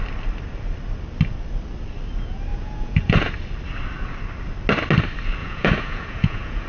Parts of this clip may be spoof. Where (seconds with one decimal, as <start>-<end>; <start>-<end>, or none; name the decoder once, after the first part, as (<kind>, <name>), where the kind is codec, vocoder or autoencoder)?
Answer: 2.5-3.3 (vocoder, Vocos); 5.4-6.7